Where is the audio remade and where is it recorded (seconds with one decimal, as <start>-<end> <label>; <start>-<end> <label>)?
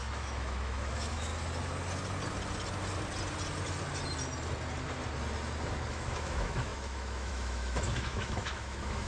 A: 0.0-1.3 remade; 1.3-5.9 recorded; 5.9-9.1 remade